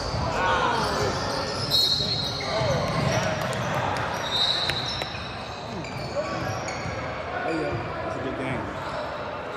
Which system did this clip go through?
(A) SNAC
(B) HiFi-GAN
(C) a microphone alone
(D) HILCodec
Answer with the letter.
C